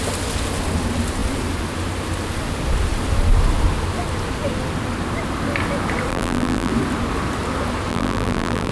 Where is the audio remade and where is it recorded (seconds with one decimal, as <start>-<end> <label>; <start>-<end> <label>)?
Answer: 0.0-6.1 recorded; 6.1-6.7 remade; 6.7-7.9 recorded; 7.9-8.7 remade